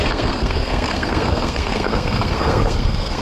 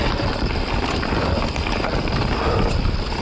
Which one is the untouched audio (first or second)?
second